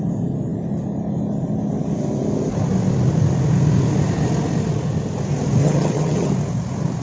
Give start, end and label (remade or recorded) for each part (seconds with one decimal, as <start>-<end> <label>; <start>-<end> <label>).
0.0-5.6 recorded; 5.6-6.3 remade; 6.3-7.0 recorded